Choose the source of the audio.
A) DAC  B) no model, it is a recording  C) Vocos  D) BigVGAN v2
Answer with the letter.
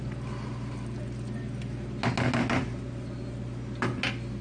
B